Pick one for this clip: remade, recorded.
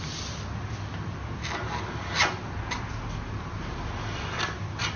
recorded